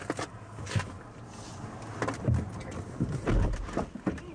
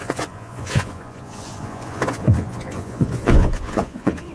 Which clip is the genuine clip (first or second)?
first